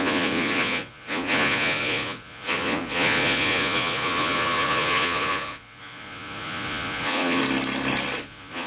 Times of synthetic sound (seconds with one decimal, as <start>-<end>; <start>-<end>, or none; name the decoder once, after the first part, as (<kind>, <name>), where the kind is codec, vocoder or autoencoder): 0.0-7.4 (vocoder, Vocos); 8.2-8.7